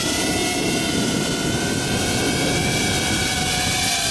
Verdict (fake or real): real